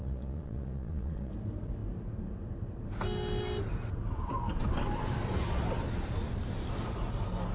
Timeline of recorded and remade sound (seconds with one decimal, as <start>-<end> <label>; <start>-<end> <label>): 0.0-1.3 remade; 1.3-7.5 recorded